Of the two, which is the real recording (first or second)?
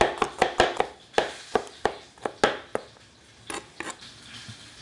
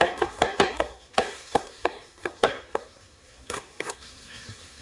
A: first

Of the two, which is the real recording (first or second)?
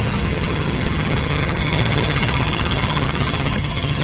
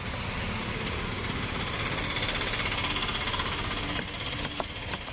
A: second